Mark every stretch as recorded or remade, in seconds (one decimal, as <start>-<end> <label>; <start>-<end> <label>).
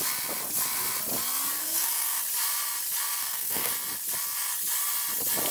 0.0-1.6 recorded; 1.6-2.2 remade; 2.2-3.2 recorded; 3.2-3.7 remade; 3.7-5.5 recorded